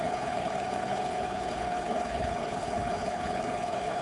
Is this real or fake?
fake